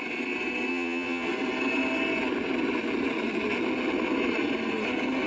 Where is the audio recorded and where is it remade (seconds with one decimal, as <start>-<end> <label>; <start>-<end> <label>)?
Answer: 0.0-0.7 recorded; 0.7-1.3 remade; 1.3-5.3 recorded

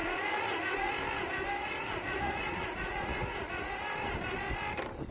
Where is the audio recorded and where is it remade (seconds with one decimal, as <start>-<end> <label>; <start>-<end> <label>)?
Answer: 0.0-0.9 remade; 0.9-1.6 recorded; 1.6-3.8 remade; 3.8-5.1 recorded

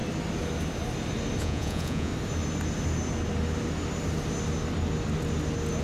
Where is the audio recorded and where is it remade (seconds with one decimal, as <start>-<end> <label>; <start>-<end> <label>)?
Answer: 0.0-1.4 recorded; 1.4-2.1 remade; 2.1-5.8 recorded

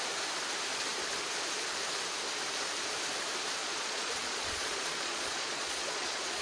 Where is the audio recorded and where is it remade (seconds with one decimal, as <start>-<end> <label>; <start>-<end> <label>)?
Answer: 0.0-3.6 recorded; 3.6-6.4 remade

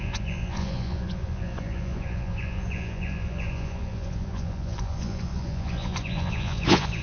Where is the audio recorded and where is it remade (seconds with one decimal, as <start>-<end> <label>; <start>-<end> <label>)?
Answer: 0.0-7.0 remade

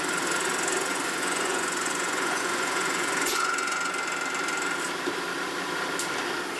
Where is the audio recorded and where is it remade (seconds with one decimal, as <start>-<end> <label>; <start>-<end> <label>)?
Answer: 0.0-0.9 recorded; 0.9-3.9 remade; 3.9-6.6 recorded

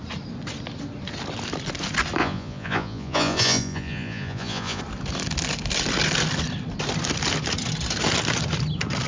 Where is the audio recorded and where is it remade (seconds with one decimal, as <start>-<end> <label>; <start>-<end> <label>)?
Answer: 0.0-2.2 recorded; 2.2-4.8 remade; 4.8-9.1 recorded